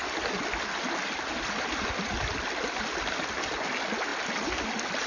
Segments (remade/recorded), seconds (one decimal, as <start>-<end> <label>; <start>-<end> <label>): 0.0-5.1 recorded